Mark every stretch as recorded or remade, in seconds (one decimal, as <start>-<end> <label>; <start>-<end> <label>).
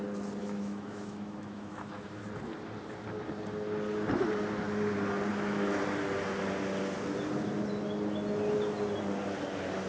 0.0-0.4 recorded; 0.4-2.2 remade; 2.2-5.3 recorded; 5.3-5.8 remade; 5.8-9.9 recorded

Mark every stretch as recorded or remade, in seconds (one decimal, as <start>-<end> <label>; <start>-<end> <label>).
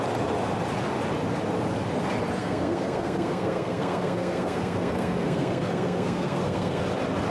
0.0-2.4 recorded; 2.4-6.8 remade; 6.8-7.3 recorded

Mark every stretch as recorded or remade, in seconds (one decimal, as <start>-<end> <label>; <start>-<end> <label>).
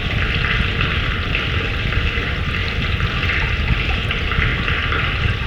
0.0-5.5 recorded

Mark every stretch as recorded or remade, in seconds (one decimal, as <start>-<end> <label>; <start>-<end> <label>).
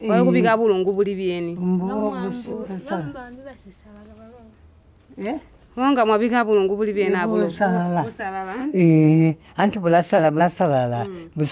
0.0-8.6 recorded; 8.6-10.4 remade; 10.4-11.5 recorded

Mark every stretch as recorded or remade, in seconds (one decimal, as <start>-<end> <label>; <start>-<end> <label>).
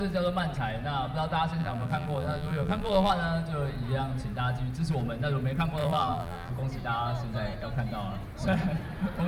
0.0-1.6 recorded; 1.6-3.1 remade; 3.1-5.8 recorded; 5.8-6.5 remade; 6.5-9.3 recorded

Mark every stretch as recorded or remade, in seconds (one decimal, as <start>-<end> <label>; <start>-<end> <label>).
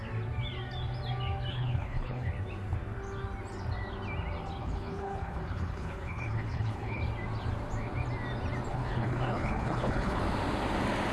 0.0-1.5 recorded; 1.5-2.3 remade; 2.3-4.6 recorded; 4.6-7.0 remade; 7.0-8.7 recorded; 8.7-10.2 remade; 10.2-11.1 recorded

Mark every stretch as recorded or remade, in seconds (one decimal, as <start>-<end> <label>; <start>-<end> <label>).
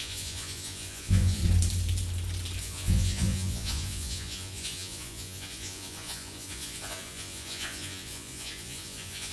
0.0-1.4 remade; 1.4-2.6 recorded; 2.6-9.3 remade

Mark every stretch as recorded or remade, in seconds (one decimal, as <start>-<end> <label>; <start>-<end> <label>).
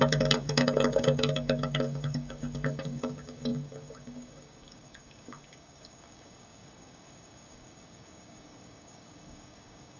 0.0-10.0 remade